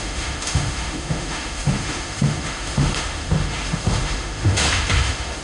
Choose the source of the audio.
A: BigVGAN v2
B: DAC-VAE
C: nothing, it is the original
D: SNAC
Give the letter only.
B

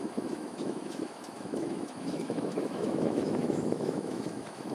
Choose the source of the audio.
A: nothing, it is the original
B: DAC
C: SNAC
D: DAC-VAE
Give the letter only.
D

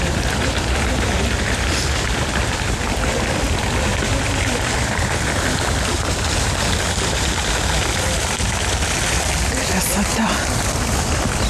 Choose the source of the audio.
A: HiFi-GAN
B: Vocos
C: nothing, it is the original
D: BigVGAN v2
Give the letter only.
D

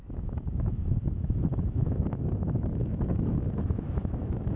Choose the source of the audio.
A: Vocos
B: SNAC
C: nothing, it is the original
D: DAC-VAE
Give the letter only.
D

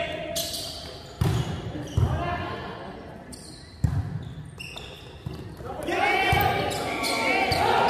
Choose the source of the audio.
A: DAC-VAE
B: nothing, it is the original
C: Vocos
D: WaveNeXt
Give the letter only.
B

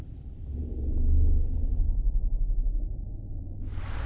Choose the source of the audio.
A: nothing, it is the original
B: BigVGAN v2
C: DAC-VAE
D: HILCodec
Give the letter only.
A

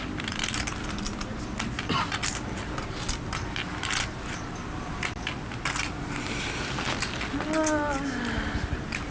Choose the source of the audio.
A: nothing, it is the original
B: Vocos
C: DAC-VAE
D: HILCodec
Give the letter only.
A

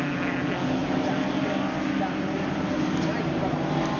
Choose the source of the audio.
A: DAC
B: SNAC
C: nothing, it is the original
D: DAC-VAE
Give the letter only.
C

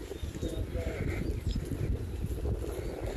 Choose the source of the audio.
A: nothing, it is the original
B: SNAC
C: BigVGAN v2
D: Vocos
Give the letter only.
A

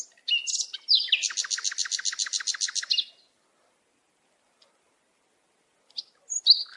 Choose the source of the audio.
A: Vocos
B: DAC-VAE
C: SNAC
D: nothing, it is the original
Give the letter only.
D